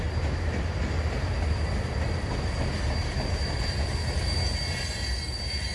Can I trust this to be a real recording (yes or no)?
yes